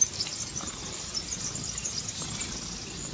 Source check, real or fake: real